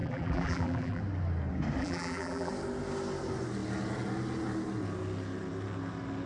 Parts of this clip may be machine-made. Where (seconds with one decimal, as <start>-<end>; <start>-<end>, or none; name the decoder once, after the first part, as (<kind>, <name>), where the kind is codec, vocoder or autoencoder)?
0.0-1.0 (vocoder, BigVGAN v2); 1.8-2.5